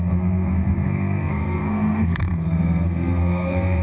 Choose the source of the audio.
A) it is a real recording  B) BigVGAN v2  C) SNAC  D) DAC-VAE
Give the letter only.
C